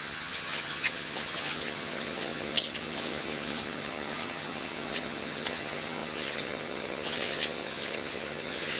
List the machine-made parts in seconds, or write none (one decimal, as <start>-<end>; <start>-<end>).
0.0-8.8